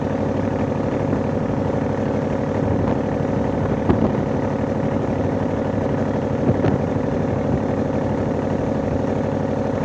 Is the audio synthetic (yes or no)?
no